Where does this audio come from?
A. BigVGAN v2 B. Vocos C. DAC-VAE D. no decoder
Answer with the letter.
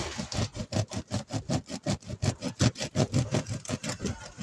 D